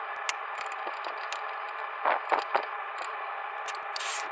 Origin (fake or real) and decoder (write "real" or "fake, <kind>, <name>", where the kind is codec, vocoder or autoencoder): real